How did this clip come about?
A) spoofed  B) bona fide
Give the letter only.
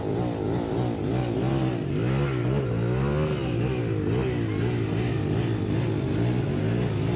B